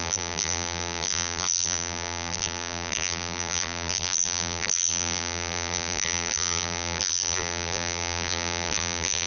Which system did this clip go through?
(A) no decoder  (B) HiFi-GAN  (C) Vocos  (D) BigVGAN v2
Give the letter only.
D